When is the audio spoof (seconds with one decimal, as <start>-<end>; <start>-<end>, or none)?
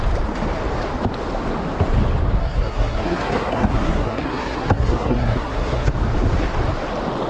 2.4-5.9